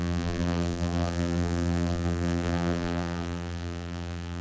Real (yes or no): no